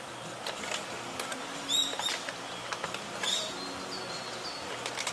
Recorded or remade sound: recorded